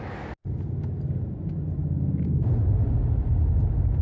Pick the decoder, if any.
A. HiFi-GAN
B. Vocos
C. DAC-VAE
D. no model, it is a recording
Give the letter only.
D